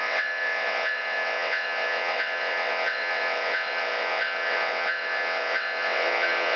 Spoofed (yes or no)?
yes